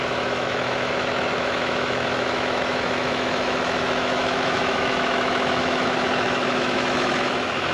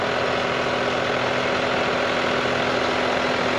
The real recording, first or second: second